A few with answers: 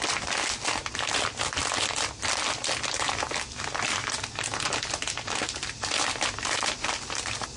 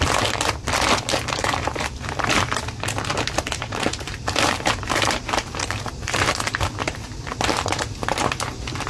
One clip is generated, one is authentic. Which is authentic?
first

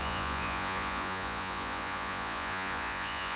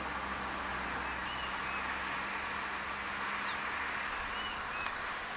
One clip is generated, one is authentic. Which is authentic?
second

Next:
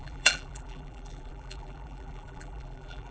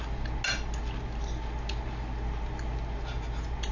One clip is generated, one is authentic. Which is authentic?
second